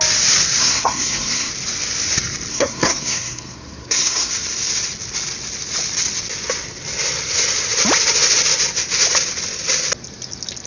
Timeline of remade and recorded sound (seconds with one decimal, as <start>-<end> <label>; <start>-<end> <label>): 0.0-0.6 recorded; 0.6-1.5 remade; 1.5-2.5 recorded; 2.5-4.3 remade; 4.3-10.7 recorded